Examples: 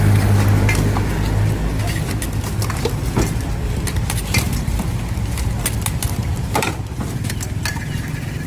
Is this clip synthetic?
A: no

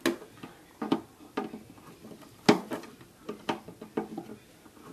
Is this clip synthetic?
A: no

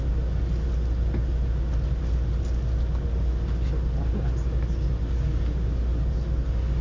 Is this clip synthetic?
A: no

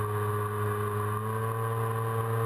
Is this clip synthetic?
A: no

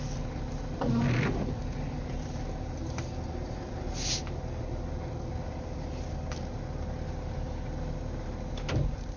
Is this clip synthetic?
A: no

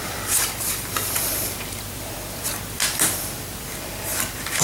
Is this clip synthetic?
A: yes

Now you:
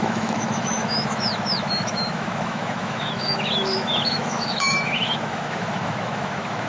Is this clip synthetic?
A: yes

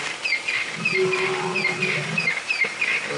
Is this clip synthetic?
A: no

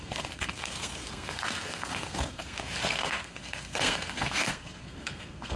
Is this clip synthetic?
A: yes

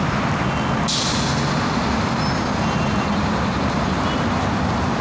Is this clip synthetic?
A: no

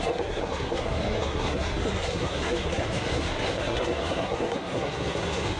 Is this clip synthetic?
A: yes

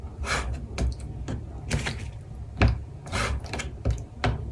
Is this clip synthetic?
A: no